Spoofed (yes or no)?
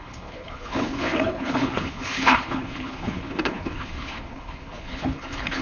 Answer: yes